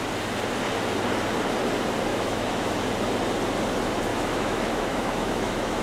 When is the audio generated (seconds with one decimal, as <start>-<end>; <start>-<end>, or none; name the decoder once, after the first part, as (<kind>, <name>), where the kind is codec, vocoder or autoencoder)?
2.1-2.9 (autoencoder, DAC-VAE); 4.1-5.8